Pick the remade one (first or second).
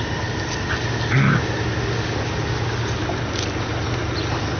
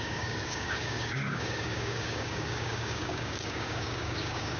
second